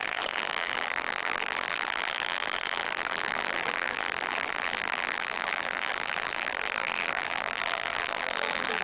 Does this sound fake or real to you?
fake